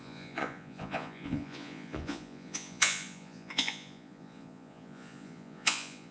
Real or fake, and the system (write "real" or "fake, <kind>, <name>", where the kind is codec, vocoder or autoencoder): fake, vocoder, Vocos